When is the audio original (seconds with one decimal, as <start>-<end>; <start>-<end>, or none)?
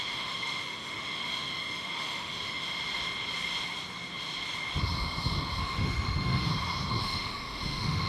2.8-5.6; 6.5-7.0